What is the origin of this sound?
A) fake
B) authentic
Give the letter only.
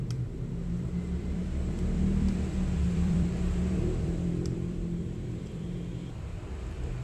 A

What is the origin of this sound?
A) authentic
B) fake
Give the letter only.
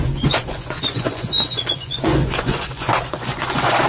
B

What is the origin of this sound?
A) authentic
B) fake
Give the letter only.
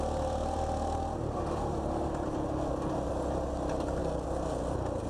A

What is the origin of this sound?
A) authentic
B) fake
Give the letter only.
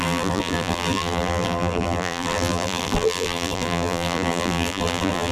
B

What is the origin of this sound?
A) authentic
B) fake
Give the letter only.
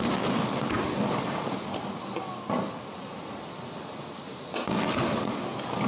A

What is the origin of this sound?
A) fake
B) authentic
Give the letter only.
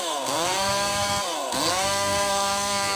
A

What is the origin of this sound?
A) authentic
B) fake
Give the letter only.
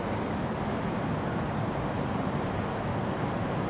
A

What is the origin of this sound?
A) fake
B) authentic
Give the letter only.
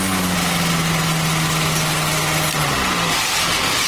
B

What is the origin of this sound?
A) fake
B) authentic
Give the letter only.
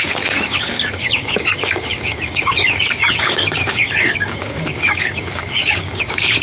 A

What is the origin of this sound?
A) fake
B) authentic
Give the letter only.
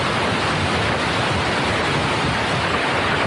B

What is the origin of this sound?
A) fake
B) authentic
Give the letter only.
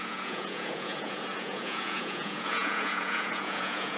A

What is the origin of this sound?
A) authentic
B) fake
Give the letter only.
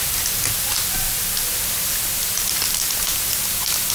A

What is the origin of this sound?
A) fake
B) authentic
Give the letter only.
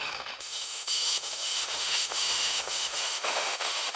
A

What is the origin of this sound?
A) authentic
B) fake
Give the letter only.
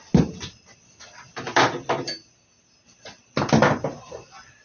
A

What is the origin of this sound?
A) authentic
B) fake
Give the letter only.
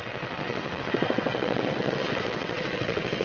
B